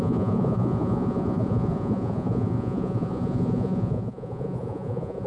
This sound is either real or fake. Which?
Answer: fake